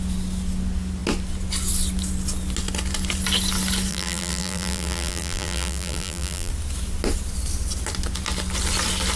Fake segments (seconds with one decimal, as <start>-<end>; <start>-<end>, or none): 3.9-6.5